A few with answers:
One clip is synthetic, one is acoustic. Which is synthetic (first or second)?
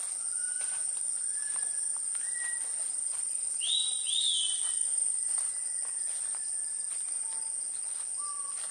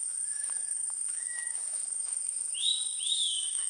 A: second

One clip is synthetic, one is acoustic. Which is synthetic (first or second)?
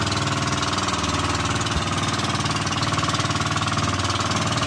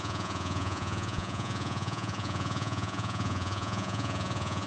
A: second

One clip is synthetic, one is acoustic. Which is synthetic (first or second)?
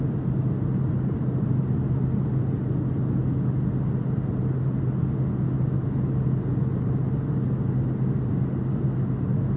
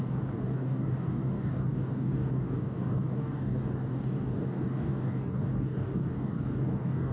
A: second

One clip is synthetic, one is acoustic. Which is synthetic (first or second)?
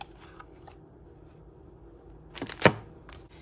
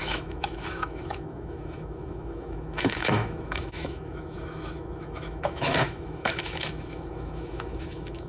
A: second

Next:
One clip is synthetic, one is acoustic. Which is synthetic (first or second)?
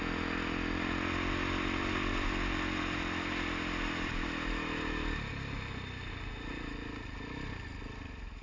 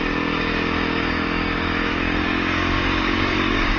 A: second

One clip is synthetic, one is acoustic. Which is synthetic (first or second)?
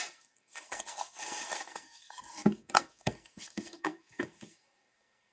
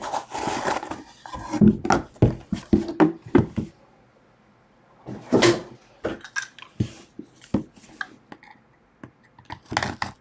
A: first